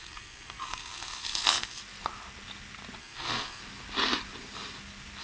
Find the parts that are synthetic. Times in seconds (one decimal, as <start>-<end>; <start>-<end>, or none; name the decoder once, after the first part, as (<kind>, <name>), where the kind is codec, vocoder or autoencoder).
0.0-1.8 (codec, SNAC); 3.0-3.6

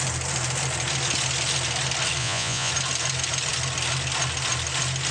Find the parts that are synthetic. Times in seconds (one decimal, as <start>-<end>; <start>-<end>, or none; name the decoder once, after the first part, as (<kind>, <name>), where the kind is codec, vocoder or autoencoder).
2.2-2.7 (vocoder, Vocos)

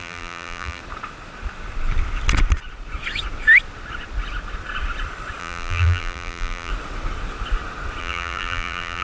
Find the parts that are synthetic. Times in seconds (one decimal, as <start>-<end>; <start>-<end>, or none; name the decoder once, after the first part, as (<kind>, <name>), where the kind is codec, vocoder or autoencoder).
0.0-0.8 (vocoder, BigVGAN v2); 5.4-6.7; 8.0-9.0

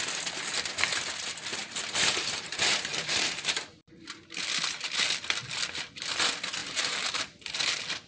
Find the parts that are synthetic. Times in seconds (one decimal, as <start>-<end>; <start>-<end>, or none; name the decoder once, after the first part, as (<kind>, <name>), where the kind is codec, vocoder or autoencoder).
1.5-3.9 (vocoder, BigVGAN v2); 6.6-7.2

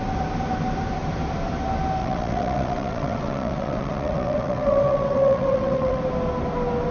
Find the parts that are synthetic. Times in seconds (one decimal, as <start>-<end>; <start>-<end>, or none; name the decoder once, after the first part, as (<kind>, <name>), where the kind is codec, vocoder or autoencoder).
2.0-6.0 (vocoder, WaveNeXt)

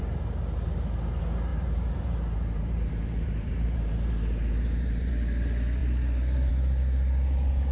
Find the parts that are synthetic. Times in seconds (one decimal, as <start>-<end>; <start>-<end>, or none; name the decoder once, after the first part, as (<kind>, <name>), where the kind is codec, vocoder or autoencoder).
1.5-5.1 (vocoder, BigVGAN v2)

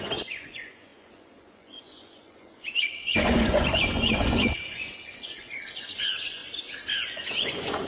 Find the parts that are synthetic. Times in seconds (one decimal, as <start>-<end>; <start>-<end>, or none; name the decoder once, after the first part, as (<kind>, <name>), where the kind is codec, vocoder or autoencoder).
0.0-6.4 (vocoder, Vocos); 6.9-7.9

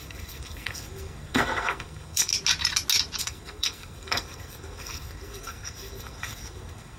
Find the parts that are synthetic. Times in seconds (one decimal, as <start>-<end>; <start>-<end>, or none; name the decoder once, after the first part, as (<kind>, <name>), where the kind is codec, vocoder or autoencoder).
0.0-2.3 (codec, SNAC); 3.2-7.0